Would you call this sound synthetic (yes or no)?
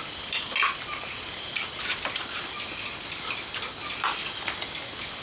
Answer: no